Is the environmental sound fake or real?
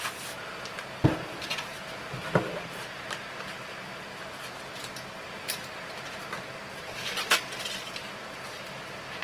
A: real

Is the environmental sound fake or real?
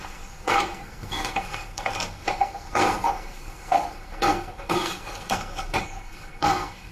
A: fake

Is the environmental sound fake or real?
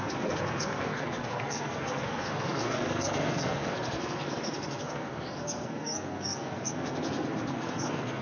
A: fake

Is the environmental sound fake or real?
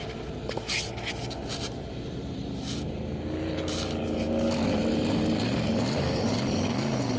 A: real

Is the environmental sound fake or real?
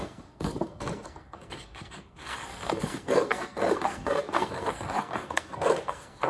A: fake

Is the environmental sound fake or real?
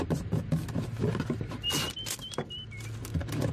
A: real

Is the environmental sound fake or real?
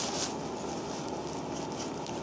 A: real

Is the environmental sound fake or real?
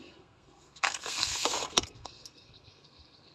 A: fake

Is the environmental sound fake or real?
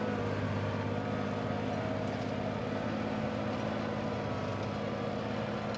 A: real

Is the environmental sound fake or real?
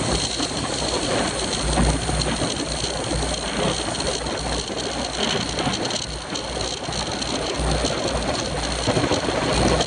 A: real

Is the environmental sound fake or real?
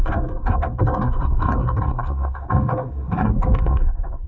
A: fake